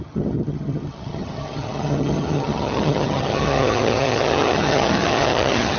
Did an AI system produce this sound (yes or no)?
yes